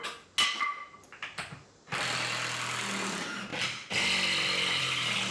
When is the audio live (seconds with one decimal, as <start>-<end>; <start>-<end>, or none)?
0.0-5.3